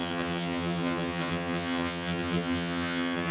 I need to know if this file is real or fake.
fake